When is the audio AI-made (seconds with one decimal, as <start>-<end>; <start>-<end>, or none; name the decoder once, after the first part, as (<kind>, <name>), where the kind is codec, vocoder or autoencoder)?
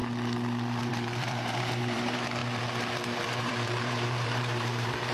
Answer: 0.9-2.4 (vocoder, BigVGAN v2); 3.2-5.1